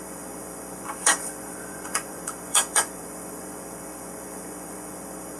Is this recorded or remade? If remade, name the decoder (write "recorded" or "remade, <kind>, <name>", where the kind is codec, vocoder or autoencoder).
remade, vocoder, Vocos